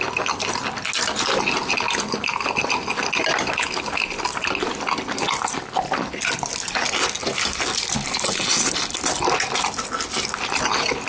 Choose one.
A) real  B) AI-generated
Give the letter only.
A